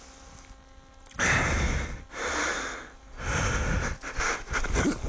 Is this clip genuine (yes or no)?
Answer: yes